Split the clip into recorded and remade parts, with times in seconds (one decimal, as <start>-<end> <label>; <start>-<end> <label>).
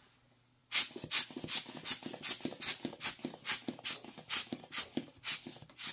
0.0-5.9 recorded